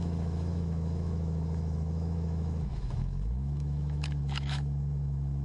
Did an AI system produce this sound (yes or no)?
yes